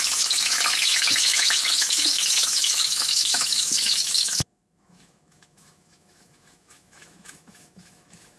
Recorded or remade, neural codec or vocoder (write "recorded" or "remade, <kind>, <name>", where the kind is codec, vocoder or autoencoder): remade, autoencoder, DAC-VAE